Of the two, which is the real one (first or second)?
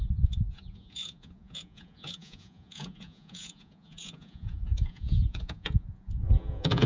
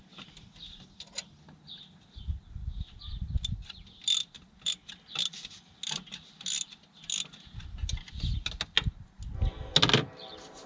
second